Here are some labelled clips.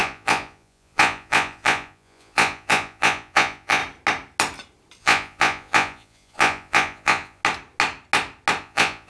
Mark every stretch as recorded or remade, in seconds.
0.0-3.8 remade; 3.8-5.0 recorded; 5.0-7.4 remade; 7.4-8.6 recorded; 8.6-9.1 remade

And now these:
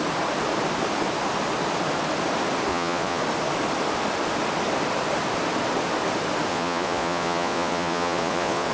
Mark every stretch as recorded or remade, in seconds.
0.0-2.7 recorded; 2.7-3.2 remade; 3.2-6.5 recorded; 6.5-8.7 remade

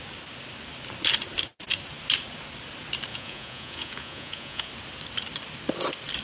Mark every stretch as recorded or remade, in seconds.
0.0-3.1 recorded; 3.1-4.7 remade; 4.7-6.2 recorded

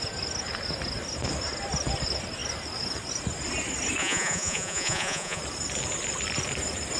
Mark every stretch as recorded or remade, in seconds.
0.0-4.0 recorded; 4.0-5.4 remade; 5.4-7.0 recorded

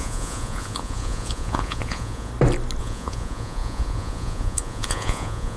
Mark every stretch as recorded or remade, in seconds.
0.0-2.3 remade; 2.3-2.8 recorded; 2.8-5.6 remade